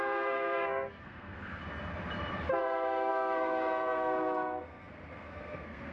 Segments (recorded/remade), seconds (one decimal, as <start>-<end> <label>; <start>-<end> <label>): 0.0-1.6 remade; 1.6-2.6 recorded; 2.6-5.9 remade